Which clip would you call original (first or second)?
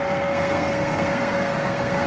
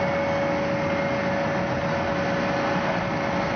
second